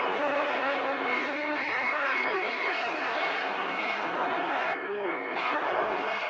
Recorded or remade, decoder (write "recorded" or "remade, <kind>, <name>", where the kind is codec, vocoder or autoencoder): remade, codec, SNAC